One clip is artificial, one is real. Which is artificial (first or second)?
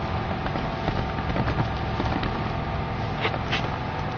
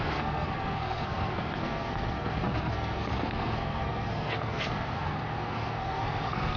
second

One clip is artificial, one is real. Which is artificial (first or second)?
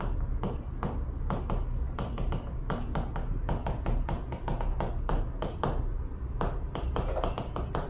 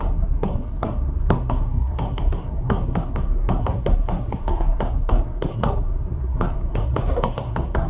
second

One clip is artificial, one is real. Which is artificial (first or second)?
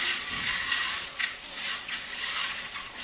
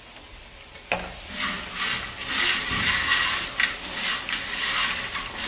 first